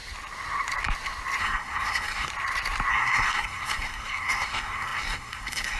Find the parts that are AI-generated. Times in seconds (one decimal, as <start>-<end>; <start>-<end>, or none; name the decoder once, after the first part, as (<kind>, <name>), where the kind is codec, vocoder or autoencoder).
1.4-2.3 (codec, SNAC); 2.9-5.8